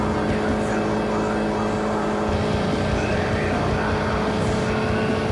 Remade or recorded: recorded